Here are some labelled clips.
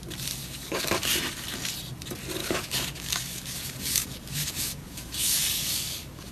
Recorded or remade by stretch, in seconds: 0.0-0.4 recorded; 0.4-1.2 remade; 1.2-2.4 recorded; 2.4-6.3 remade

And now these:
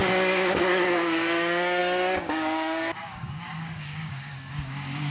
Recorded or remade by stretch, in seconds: 0.0-5.1 remade